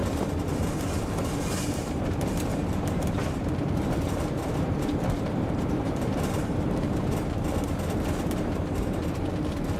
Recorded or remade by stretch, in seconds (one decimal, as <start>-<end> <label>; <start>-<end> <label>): 0.0-9.8 remade